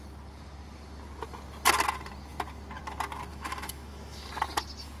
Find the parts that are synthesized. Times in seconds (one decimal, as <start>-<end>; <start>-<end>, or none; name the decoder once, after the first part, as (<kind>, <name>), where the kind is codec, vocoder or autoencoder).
3.3-4.3 (autoencoder, DAC-VAE)